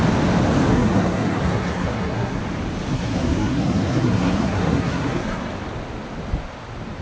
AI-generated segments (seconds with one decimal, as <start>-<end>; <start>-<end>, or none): 0.7-2.4; 2.9-5.5